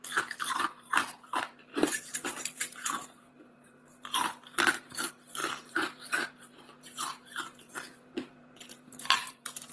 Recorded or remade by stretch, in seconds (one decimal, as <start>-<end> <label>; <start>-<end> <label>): 0.0-9.7 remade